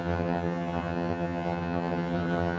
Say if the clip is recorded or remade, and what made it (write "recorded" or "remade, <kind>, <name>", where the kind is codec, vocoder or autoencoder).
remade, vocoder, HiFi-GAN